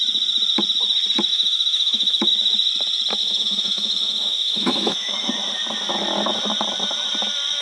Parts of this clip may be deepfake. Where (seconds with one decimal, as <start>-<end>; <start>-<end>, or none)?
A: 1.3-2.3; 3.2-5.3